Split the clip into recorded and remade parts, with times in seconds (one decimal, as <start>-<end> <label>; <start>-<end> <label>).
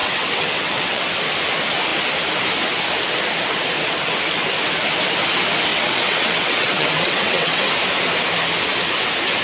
0.0-1.0 remade; 1.0-5.7 recorded; 5.7-7.7 remade; 7.7-9.4 recorded